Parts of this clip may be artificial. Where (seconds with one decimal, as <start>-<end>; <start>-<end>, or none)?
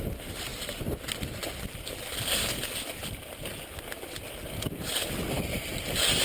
none